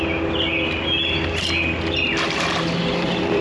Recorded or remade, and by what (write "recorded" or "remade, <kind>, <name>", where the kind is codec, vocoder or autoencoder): recorded